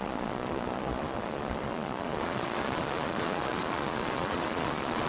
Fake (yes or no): yes